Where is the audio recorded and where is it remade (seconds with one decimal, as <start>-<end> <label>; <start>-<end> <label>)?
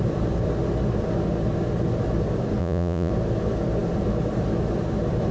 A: 0.0-2.6 recorded; 2.6-3.1 remade; 3.1-5.3 recorded